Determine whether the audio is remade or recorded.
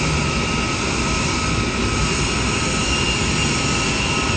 recorded